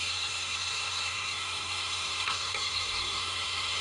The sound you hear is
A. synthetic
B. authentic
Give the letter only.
A